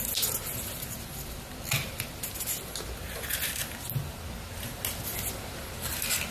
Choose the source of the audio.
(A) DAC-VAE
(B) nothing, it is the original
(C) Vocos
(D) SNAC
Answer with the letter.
B